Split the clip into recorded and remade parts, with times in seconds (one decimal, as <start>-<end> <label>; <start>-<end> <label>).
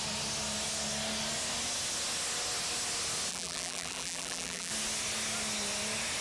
0.0-3.3 recorded; 3.3-4.7 remade; 4.7-6.2 recorded